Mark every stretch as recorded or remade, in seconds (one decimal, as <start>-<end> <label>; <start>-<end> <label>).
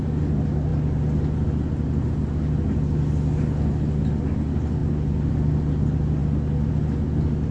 0.0-7.5 recorded